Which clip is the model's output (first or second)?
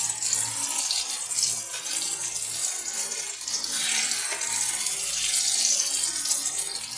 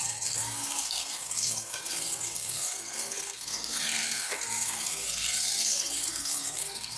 second